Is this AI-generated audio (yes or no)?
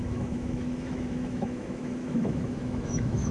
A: yes